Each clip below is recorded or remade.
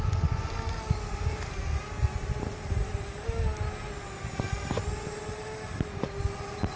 recorded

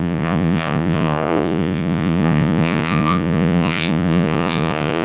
remade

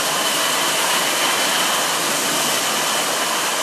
recorded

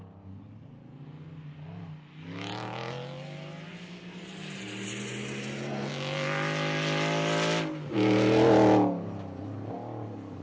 recorded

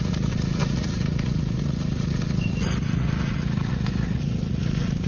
remade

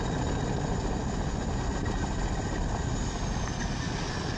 recorded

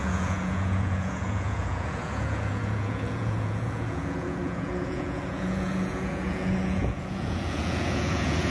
remade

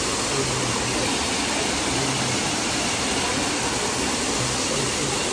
recorded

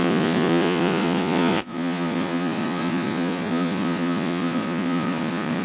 remade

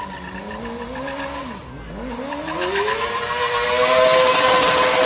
recorded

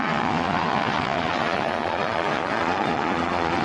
remade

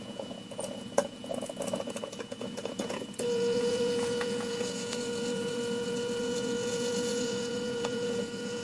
remade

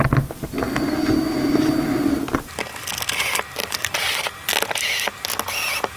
recorded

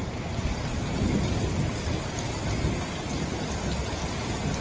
recorded